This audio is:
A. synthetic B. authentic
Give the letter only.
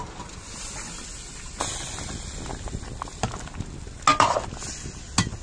B